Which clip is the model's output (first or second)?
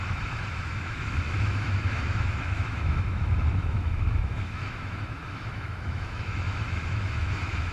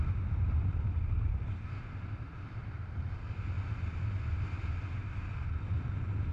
first